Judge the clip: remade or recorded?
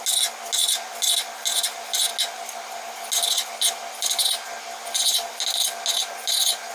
recorded